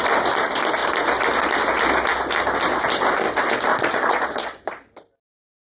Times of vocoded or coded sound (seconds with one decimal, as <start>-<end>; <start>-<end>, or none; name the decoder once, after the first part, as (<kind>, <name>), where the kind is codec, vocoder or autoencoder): 3.7-4.7 (vocoder, Vocos)